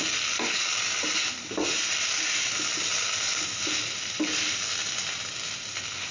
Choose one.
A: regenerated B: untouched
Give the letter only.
B